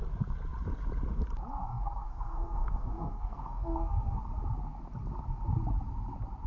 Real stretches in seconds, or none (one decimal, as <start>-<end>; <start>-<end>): 0.0-1.7; 4.2-6.5